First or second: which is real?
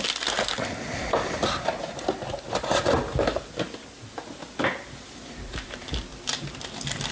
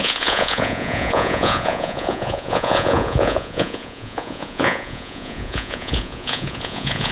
first